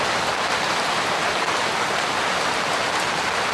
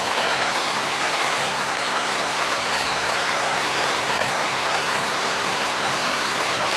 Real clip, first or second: first